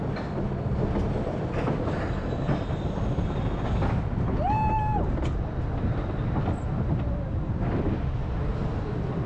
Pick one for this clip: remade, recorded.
recorded